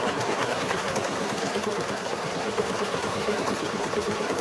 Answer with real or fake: fake